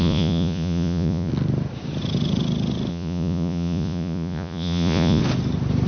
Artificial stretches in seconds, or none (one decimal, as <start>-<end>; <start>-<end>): 0.0-1.3; 2.9-5.2